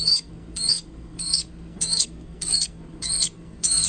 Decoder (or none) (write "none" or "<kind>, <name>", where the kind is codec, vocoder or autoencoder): codec, SNAC